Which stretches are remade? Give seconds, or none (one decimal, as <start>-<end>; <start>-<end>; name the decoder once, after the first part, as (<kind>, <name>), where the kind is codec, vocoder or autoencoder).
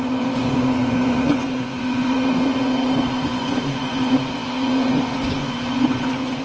0.0-6.4 (vocoder, Vocos)